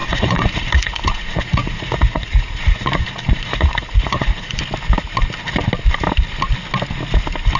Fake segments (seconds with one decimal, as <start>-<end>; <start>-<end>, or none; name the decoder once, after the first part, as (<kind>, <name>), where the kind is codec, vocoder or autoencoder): 0.0-4.6 (vocoder, Vocos)